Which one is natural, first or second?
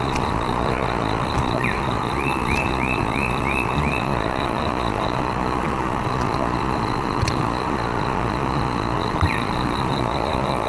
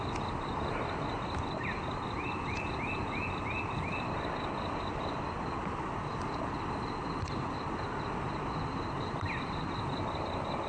second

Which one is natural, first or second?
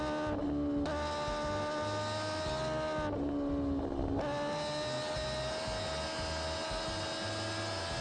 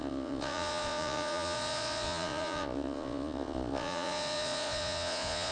first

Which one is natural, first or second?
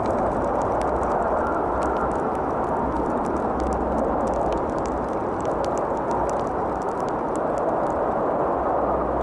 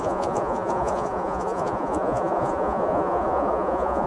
first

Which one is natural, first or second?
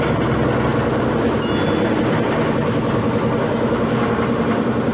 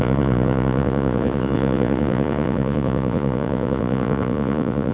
first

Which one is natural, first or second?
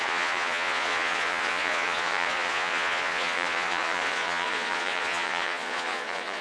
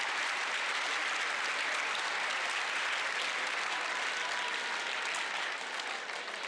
second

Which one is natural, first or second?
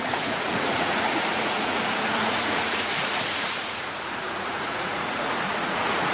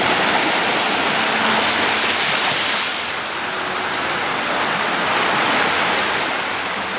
second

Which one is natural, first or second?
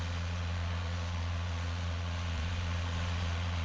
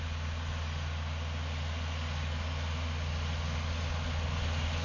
second